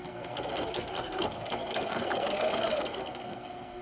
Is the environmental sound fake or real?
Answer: fake